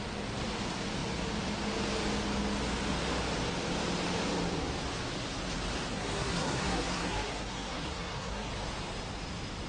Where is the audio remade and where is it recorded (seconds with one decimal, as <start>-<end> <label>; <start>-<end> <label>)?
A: 0.0-5.9 recorded; 5.9-8.5 remade; 8.5-9.7 recorded

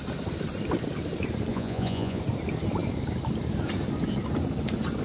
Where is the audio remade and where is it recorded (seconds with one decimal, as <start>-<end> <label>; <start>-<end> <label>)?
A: 0.0-1.5 recorded; 1.5-2.2 remade; 2.2-5.0 recorded

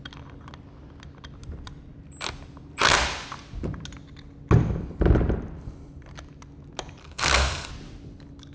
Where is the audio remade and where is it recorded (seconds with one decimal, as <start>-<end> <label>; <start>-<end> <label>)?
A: 0.0-7.0 recorded; 7.0-7.7 remade; 7.7-8.5 recorded

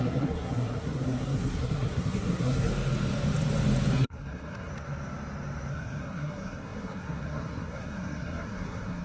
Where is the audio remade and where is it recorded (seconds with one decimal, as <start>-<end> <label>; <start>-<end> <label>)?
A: 0.0-2.7 remade; 2.7-3.9 recorded; 3.9-4.7 remade; 4.7-5.7 recorded; 5.7-9.0 remade

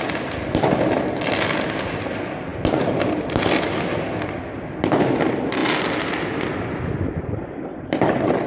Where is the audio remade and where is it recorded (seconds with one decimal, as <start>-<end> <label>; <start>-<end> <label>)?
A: 0.0-8.5 recorded

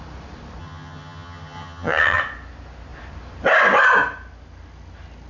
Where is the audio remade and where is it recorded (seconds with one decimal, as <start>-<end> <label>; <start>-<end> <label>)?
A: 0.0-0.6 recorded; 0.6-2.2 remade; 2.2-5.3 recorded

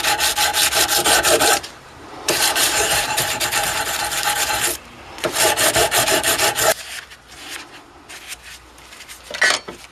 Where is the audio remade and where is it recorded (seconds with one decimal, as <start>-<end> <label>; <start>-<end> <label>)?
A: 0.0-0.5 recorded; 0.5-3.8 remade; 3.8-5.8 recorded; 5.8-6.4 remade; 6.4-9.9 recorded